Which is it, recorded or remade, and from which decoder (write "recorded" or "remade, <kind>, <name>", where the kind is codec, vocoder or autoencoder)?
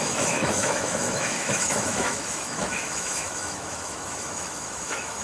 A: remade, autoencoder, DAC-VAE